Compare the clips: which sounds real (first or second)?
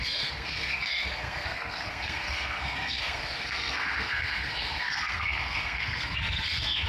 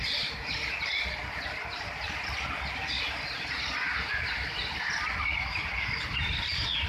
second